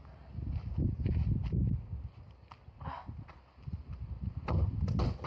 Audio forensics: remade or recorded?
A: recorded